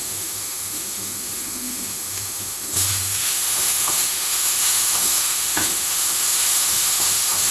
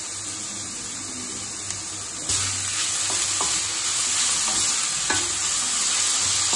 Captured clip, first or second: second